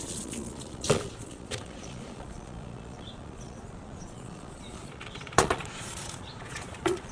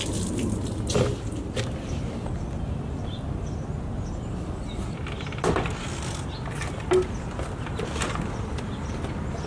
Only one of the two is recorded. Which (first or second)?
second